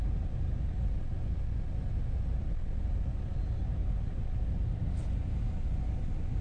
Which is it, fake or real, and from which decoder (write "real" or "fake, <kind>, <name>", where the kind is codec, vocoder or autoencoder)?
real